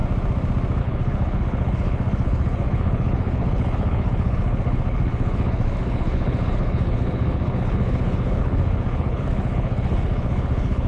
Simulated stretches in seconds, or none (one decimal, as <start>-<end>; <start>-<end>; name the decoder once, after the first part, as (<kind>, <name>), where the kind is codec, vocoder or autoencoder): 0.8-10.9 (codec, HILCodec)